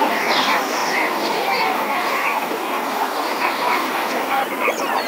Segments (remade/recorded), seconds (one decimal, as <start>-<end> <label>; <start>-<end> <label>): 0.0-4.4 remade; 4.4-5.1 recorded